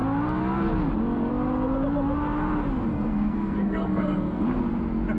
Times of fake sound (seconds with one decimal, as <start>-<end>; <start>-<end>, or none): 2.9-4.6